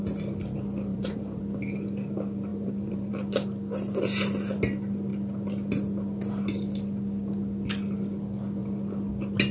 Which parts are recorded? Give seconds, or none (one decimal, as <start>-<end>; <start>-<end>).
0.0-0.9; 1.4-2.5; 3.1-9.5